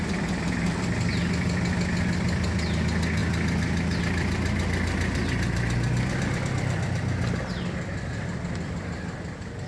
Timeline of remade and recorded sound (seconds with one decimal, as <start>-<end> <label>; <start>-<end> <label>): 0.0-9.7 recorded